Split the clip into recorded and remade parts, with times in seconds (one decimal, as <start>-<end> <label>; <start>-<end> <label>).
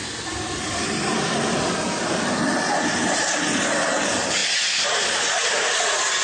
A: 0.0-6.2 recorded